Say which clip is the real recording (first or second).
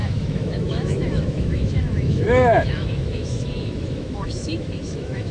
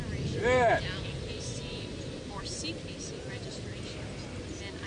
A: second